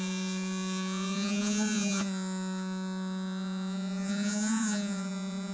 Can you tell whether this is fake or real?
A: fake